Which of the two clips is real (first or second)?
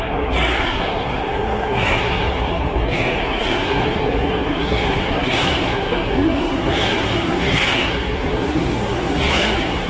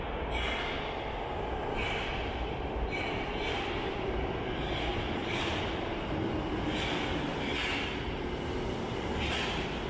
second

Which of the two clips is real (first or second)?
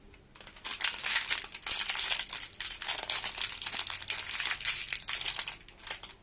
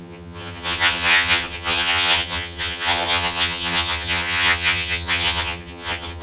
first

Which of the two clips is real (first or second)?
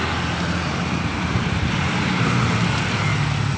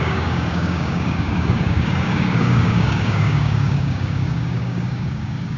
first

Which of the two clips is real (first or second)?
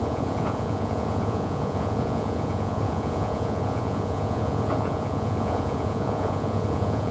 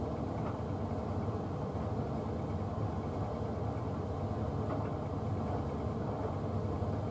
second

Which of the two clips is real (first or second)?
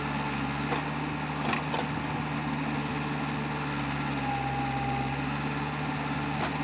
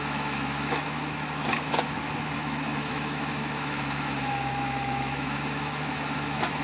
first